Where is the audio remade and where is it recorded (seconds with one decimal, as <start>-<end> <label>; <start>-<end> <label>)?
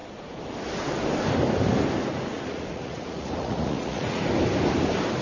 0.0-2.3 recorded; 2.3-4.2 remade; 4.2-5.2 recorded